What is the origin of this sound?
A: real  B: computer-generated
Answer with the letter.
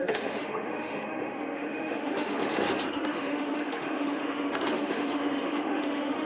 B